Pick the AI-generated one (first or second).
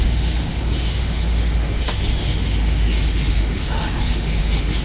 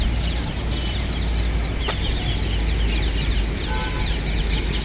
first